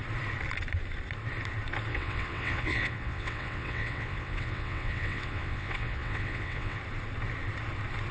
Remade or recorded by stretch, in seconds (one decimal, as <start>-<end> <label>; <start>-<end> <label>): 0.0-1.9 recorded; 1.9-6.8 remade; 6.8-8.1 recorded